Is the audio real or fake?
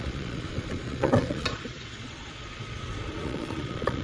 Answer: fake